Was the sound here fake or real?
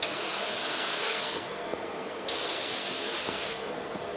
fake